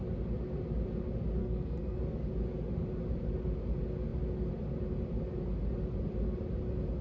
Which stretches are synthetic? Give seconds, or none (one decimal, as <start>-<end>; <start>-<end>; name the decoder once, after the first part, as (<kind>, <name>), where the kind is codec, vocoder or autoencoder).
1.4-2.0 (codec, SNAC)